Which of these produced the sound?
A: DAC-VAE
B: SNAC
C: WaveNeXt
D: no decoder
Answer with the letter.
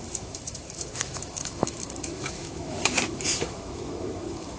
A